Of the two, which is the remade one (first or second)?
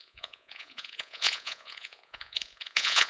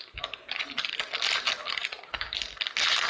first